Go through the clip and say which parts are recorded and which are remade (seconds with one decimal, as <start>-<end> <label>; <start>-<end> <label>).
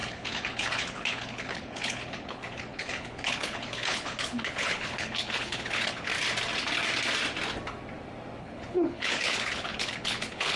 0.0-6.1 remade; 6.1-8.4 recorded; 8.4-10.6 remade